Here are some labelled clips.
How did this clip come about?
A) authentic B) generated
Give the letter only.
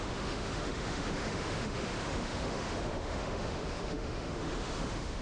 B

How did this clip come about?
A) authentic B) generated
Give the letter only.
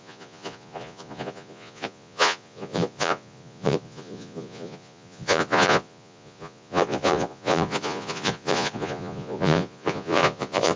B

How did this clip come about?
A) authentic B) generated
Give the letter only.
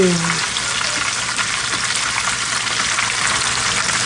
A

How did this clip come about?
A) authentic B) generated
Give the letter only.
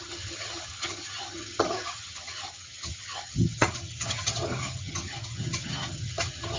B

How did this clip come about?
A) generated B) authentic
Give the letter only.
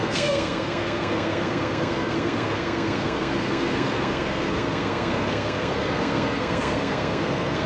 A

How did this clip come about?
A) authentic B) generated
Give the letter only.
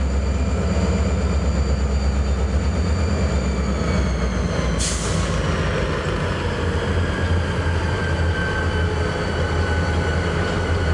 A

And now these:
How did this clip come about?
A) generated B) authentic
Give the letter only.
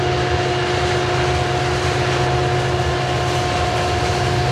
B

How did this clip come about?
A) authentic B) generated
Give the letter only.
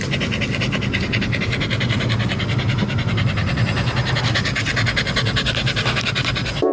A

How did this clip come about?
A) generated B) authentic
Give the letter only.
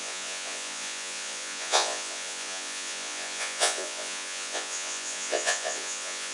A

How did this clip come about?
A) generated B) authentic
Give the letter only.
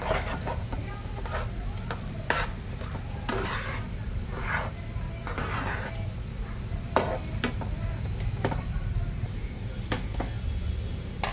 B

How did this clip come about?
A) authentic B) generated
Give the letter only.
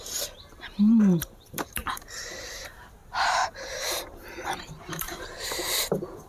B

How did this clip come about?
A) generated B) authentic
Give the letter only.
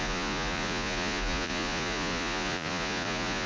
A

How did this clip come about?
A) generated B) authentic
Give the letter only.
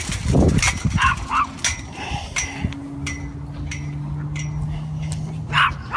B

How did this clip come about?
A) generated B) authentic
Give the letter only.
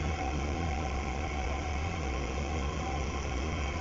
A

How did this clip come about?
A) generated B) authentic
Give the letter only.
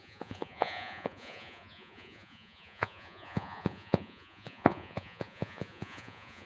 A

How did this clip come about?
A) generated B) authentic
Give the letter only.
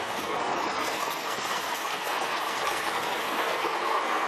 A